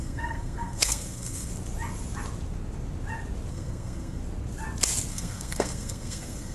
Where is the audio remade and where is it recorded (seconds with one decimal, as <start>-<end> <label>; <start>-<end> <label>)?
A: 0.0-1.5 remade; 1.5-3.5 recorded; 3.5-4.2 remade; 4.2-5.1 recorded; 5.1-6.5 remade